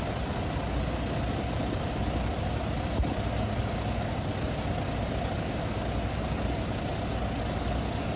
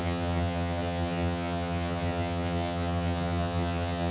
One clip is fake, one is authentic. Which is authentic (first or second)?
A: first